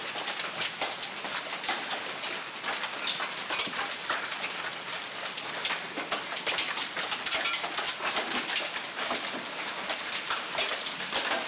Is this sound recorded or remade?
recorded